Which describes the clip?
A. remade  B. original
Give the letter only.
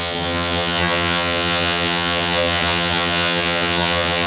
A